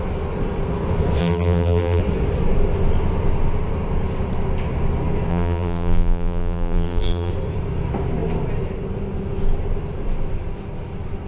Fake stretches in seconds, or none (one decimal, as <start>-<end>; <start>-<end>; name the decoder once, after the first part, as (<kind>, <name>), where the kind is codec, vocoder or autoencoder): 1.2-2.0 (vocoder, BigVGAN v2); 5.3-7.3